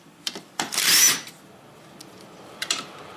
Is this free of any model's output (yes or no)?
no